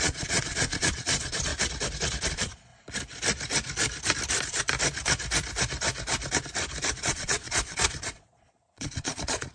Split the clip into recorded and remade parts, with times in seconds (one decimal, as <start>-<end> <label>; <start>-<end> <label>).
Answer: 0.0-1.5 remade; 1.5-2.3 recorded; 2.3-2.7 remade; 2.7-7.0 recorded; 7.0-9.5 remade